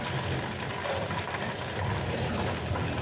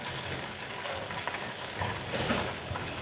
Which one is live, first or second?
first